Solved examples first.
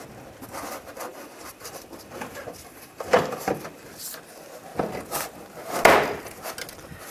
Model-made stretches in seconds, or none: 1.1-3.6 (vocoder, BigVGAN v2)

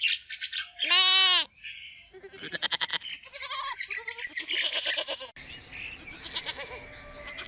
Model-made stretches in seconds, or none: none

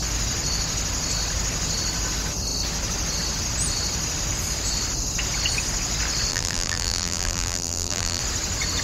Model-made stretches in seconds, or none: 6.3-8.2 (vocoder, BigVGAN v2)

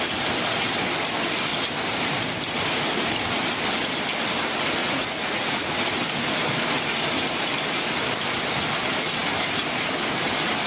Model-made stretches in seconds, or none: 4.8-5.7 (vocoder, Vocos)

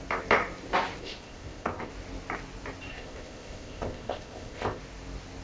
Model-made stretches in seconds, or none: 1.0-1.9 (codec, ZipCodec); 2.9-4.8